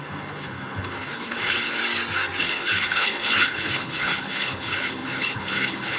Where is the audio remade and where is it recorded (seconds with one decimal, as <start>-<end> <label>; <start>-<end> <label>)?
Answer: 0.0-1.8 remade; 1.8-2.4 recorded; 2.4-6.0 remade